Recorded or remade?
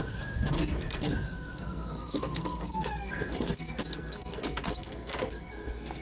remade